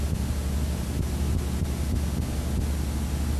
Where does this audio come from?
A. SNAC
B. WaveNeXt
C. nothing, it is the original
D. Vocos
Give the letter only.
C